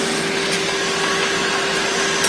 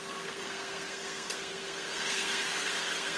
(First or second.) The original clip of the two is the first